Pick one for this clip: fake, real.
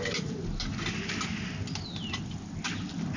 real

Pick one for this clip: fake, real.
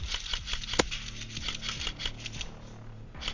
real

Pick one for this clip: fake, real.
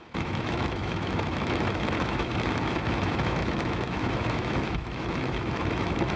fake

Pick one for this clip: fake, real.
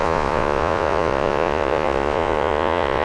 fake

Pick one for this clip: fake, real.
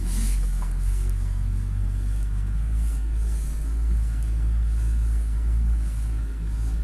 fake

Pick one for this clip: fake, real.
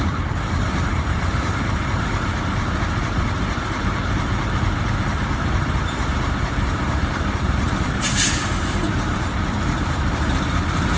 fake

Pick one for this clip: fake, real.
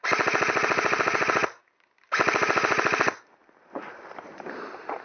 real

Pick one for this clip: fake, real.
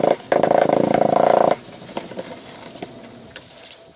fake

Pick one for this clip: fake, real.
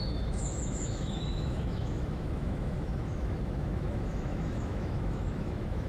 fake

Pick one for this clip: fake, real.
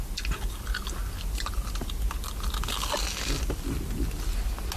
real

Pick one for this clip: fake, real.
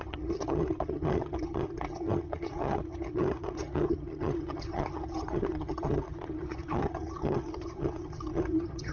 fake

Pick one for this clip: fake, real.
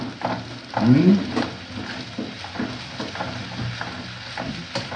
real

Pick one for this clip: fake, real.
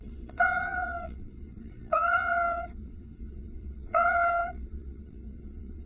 fake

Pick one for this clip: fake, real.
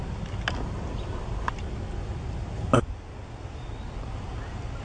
real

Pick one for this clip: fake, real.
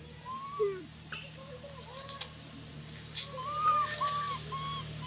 real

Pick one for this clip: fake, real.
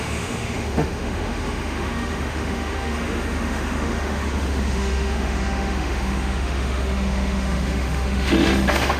fake